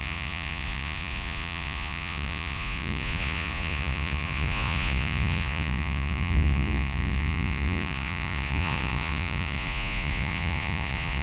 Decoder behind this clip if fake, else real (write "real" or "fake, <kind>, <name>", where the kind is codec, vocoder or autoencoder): fake, vocoder, Vocos